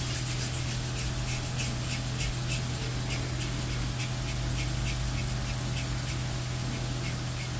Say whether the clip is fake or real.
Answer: real